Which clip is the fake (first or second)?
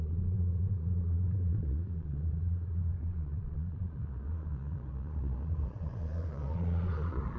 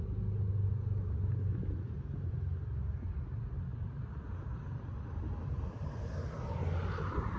first